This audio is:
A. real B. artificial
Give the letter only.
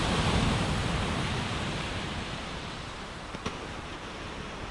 B